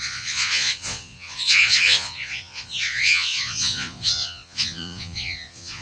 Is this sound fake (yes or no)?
yes